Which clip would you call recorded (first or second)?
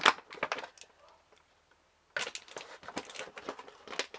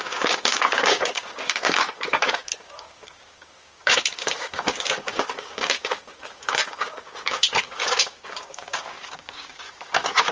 first